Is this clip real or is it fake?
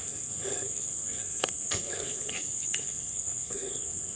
fake